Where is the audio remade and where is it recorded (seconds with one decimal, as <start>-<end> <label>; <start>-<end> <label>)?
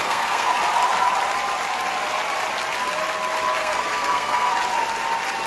0.0-0.5 remade; 0.5-3.6 recorded; 3.6-4.5 remade; 4.5-5.5 recorded